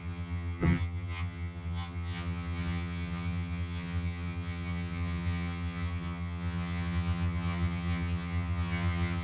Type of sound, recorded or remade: remade